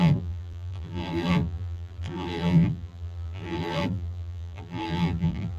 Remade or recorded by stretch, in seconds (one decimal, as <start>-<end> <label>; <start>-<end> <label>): 0.0-5.6 remade